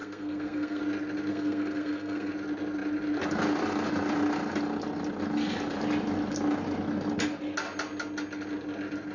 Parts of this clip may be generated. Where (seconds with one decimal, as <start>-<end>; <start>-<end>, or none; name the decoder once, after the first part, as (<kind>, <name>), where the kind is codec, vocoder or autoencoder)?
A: 0.0-0.8 (codec, SNAC); 1.3-2.3